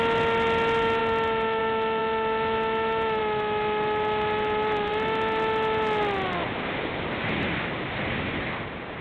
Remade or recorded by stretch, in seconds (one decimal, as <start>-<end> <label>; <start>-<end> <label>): 0.0-9.0 recorded